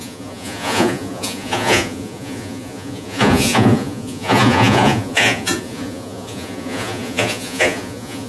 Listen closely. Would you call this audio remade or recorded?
remade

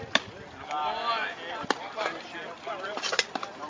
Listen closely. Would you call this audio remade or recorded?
recorded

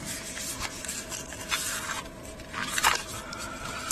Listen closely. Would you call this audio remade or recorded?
recorded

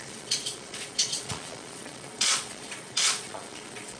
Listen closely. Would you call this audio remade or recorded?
remade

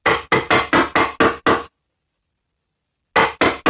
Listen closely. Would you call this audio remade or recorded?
recorded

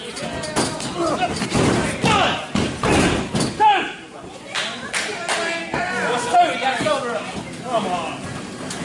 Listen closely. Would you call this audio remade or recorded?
recorded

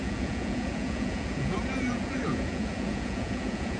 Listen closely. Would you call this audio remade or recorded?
remade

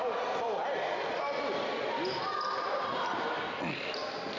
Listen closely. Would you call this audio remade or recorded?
recorded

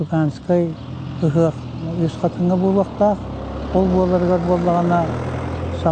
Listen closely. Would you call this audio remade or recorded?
recorded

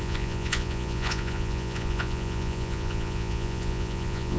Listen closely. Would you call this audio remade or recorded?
remade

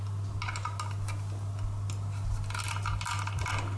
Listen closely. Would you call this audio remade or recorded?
recorded